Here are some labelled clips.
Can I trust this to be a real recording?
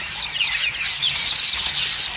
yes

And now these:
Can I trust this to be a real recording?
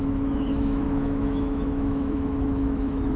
no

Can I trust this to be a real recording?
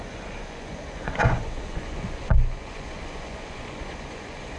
no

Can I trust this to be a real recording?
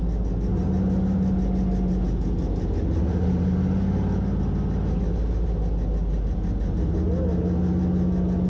yes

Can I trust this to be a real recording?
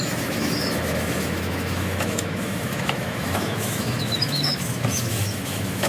no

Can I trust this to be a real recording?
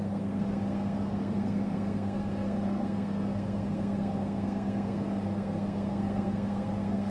no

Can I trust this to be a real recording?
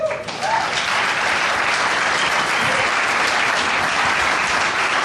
no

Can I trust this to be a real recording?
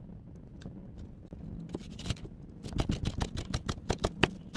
yes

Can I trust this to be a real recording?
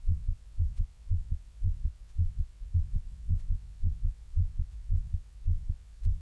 no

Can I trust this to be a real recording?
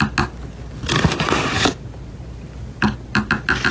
yes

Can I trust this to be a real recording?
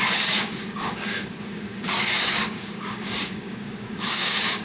no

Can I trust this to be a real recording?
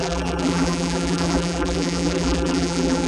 no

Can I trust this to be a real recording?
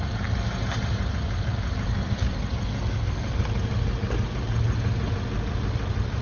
yes